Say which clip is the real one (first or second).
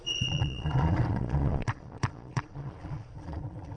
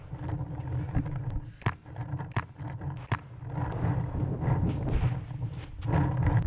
second